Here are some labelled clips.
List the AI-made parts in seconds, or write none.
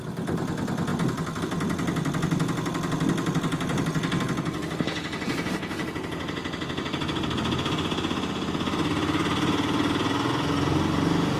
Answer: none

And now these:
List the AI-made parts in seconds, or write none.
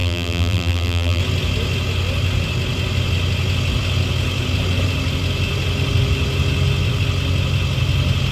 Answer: 0.0-1.2 (vocoder, BigVGAN v2)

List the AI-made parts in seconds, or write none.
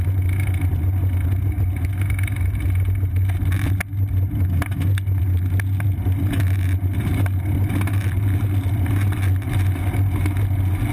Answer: none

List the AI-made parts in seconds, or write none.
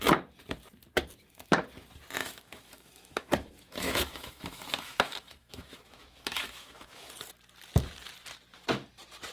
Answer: 2.2-7.1 (autoencoder, DAC-VAE)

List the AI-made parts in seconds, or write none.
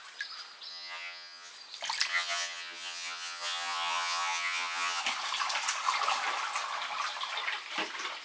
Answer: 0.7-1.5 (vocoder, HiFi-GAN); 2.1-5.0